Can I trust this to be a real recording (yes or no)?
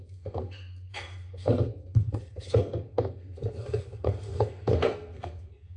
no